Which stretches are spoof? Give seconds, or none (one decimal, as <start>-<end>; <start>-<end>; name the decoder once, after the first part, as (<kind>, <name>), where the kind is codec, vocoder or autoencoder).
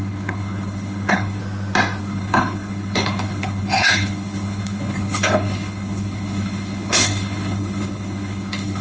0.0-1.4 (codec, HILCodec); 2.0-8.8